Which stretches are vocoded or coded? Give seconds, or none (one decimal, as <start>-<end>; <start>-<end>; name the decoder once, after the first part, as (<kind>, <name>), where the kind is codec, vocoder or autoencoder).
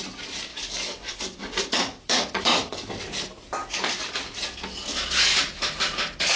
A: 0.5-2.9 (codec, DAC); 3.6-4.2; 4.9-5.4